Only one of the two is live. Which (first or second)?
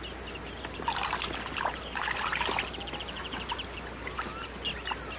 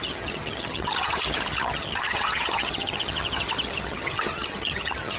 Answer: first